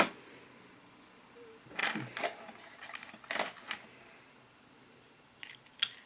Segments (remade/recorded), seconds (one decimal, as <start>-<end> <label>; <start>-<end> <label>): 0.0-6.1 recorded

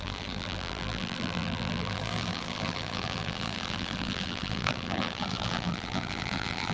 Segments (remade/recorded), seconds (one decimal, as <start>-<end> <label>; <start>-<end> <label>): 0.0-6.7 remade

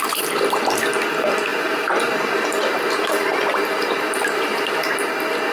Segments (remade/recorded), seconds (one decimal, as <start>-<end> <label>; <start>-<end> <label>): 0.0-1.5 recorded; 1.5-4.8 remade; 4.8-5.5 recorded

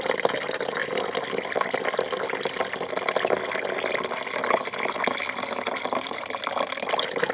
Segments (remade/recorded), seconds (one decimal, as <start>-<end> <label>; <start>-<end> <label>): 0.0-7.3 recorded

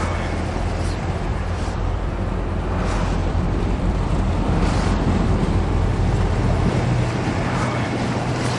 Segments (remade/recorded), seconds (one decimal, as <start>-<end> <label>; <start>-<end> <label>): 0.0-1.3 recorded; 1.3-2.1 remade; 2.1-3.2 recorded; 3.2-4.1 remade; 4.1-8.6 recorded

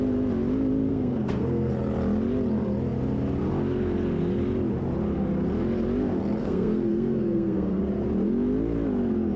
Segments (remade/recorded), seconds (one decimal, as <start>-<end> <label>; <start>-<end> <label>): 0.0-0.9 recorded; 0.9-1.7 remade; 1.7-6.4 recorded; 6.4-7.8 remade; 7.8-9.4 recorded

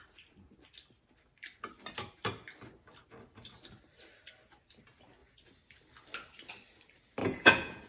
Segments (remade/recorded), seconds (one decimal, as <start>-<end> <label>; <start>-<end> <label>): 0.0-7.2 recorded; 7.2-7.9 remade

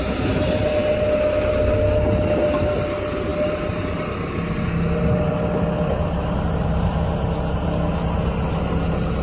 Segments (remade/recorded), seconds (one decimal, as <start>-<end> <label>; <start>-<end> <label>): 0.0-9.2 recorded